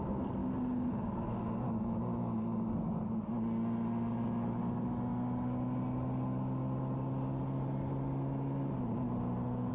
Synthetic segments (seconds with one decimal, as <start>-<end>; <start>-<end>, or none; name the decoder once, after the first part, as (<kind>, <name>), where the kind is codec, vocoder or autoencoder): none

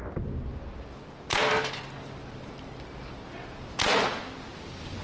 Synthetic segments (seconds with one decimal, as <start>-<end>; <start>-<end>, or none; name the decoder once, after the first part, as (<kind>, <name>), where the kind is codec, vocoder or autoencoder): none

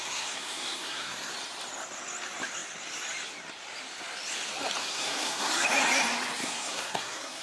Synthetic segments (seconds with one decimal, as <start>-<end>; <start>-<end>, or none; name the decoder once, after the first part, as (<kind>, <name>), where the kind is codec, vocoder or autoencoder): 0.0-1.3 (codec, SNAC); 4.8-5.5; 6.4-7.4

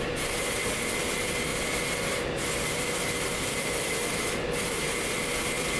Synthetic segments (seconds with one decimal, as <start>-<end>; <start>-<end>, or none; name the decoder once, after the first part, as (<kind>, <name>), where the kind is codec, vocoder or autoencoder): none

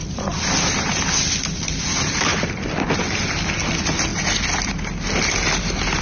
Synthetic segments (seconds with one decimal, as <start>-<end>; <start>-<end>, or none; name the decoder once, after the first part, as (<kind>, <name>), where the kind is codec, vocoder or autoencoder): 0.0-0.8 (vocoder, BigVGAN v2); 2.3-3.0

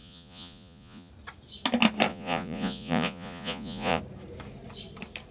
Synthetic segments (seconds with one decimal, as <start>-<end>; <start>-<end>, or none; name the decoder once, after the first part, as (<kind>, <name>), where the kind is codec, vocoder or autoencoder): 0.0-1.1 (vocoder, Vocos); 2.1-4.0